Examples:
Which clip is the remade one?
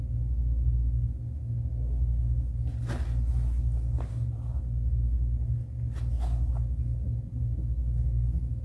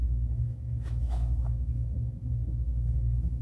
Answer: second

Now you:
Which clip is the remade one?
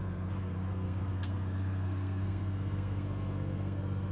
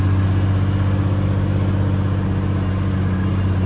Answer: first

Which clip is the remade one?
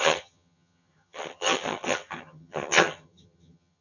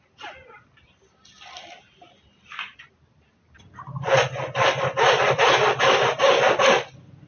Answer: first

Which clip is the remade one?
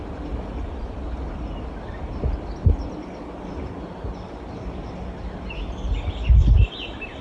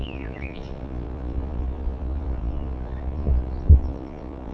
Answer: second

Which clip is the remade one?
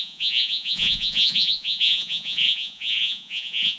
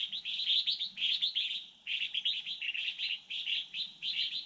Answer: first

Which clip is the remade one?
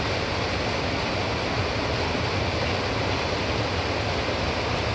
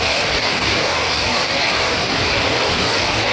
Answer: second